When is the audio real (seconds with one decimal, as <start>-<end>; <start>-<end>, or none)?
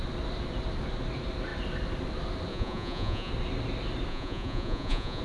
0.0-2.5; 3.3-4.1